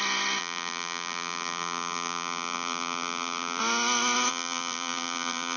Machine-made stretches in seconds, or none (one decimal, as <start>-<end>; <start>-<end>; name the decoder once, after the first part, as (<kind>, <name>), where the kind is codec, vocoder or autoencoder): 0.4-3.6 (vocoder, BigVGAN v2); 4.3-5.6